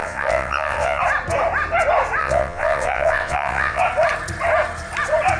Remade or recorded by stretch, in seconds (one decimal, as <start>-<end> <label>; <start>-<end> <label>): 0.0-1.0 remade; 1.0-2.2 recorded; 2.2-3.8 remade; 3.8-5.4 recorded